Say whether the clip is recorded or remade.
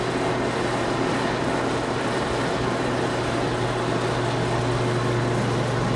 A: recorded